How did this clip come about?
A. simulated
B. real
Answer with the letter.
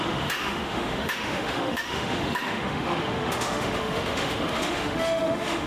A